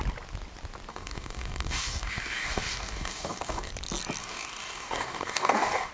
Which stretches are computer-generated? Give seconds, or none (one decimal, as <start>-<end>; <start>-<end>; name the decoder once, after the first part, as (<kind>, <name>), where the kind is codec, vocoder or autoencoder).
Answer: 0.9-3.7 (codec, DAC); 4.2-5.9